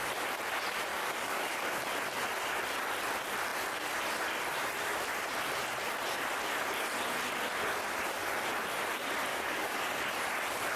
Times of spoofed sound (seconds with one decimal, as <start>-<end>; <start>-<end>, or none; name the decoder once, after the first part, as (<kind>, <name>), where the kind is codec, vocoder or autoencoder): 0.9-1.6 (codec, DAC); 9.3-10.0